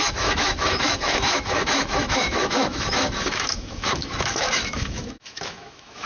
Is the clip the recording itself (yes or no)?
no